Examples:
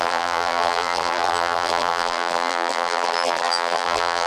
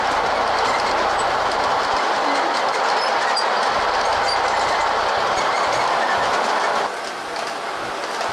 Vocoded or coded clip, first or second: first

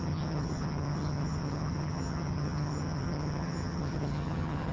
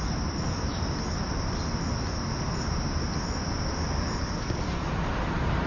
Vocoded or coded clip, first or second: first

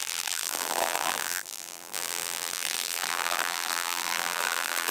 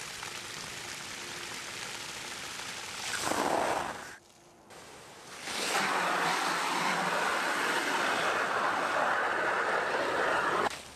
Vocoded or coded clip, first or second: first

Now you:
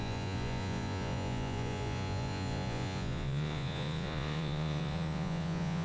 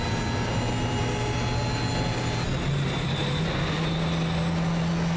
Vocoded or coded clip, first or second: first